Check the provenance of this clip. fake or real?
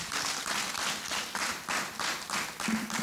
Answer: real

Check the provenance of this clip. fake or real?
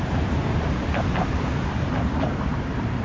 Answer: fake